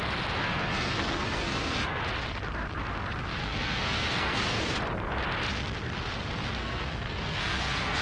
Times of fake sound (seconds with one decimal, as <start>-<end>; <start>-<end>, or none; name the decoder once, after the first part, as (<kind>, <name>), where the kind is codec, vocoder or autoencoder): 0.4-2.0 (codec, SNAC); 3.4-4.6; 6.6-8.0